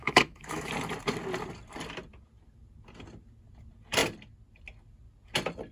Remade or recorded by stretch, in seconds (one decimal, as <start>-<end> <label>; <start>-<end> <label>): 0.0-0.7 remade; 0.7-5.7 recorded